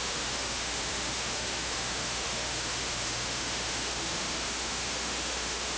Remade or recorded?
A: remade